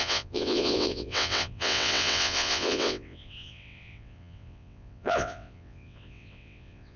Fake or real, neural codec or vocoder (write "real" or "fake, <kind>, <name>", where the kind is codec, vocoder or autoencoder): fake, vocoder, WaveNeXt